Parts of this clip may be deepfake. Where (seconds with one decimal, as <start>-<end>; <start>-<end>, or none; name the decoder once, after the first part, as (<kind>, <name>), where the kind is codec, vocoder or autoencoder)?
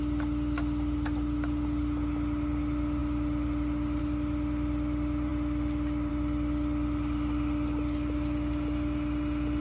none